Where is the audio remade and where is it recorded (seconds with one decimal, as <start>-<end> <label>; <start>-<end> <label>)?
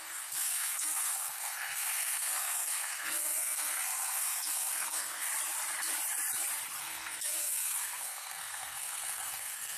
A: 0.0-5.3 remade; 5.3-6.8 recorded; 6.8-9.8 remade